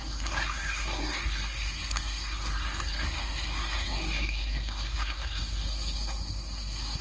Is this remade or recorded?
remade